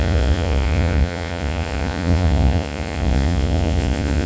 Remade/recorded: remade